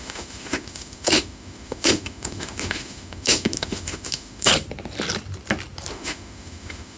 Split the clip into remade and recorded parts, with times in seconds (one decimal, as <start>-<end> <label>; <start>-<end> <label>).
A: 0.0-4.5 remade; 4.5-5.9 recorded; 5.9-7.0 remade